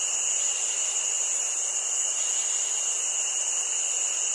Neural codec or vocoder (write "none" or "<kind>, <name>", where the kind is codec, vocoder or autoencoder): none